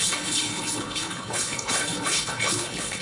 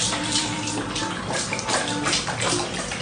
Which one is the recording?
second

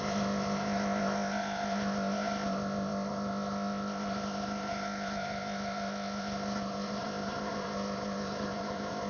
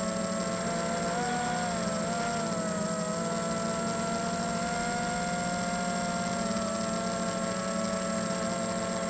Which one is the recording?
second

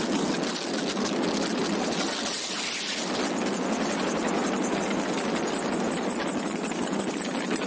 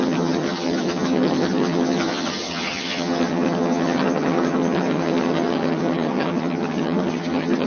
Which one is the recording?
first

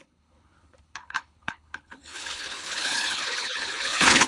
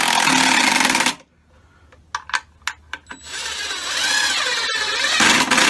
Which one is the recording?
second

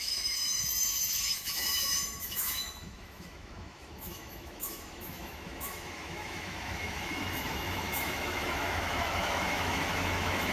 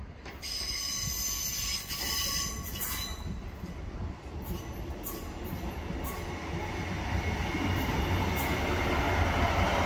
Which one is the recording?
second